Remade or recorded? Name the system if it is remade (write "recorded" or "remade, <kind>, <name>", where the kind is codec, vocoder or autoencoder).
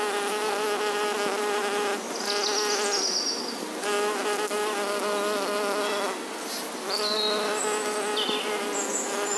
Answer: recorded